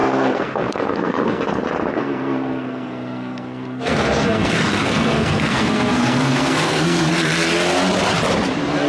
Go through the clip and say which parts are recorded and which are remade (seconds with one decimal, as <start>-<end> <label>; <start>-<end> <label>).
0.0-1.4 remade; 1.4-1.9 recorded; 1.9-7.1 remade; 7.1-8.9 recorded